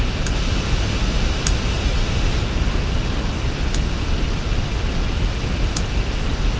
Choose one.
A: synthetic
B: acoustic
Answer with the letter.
B